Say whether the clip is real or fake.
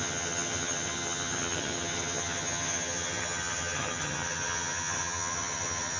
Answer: fake